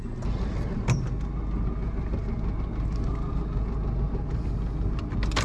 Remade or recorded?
recorded